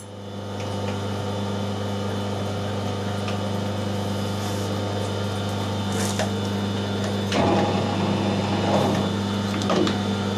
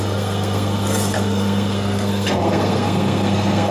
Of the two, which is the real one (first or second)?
first